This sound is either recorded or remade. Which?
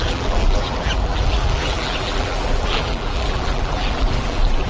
remade